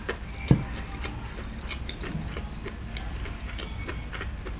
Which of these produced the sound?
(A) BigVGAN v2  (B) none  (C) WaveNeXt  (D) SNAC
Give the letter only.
B